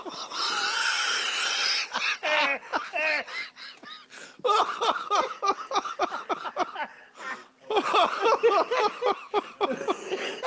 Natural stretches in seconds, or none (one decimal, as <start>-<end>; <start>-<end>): 0.0-10.5